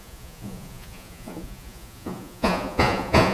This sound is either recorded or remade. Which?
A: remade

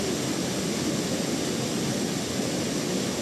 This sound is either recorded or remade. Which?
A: recorded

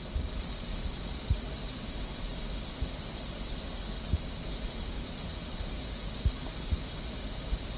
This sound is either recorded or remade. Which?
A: recorded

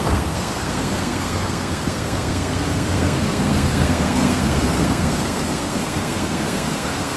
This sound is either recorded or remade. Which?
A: remade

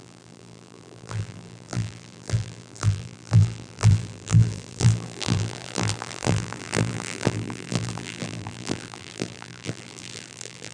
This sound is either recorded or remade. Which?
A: remade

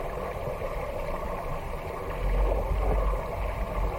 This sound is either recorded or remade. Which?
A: recorded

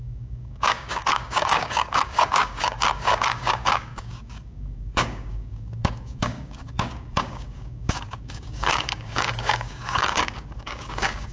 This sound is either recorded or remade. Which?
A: remade